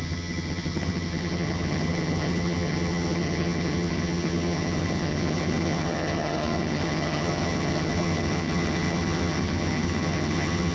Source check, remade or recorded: remade